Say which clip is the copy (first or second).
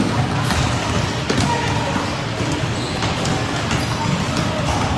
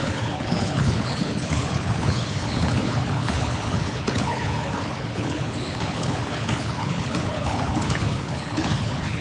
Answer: second